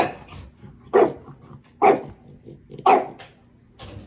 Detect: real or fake real